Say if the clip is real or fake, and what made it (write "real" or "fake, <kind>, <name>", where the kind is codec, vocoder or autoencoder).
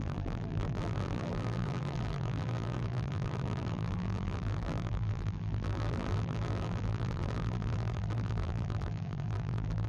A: fake, vocoder, BigVGAN v2